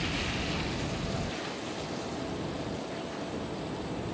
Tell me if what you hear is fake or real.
real